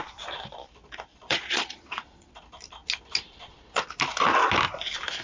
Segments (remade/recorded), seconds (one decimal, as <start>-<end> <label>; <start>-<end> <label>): 0.0-1.1 recorded; 1.1-2.3 remade; 2.3-5.2 recorded